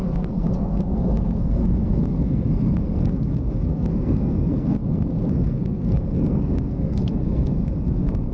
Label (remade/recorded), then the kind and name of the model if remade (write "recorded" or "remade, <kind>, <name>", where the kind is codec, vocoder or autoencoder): remade, codec, SNAC